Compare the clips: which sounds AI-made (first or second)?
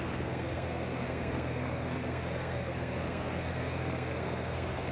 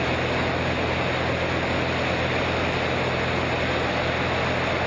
first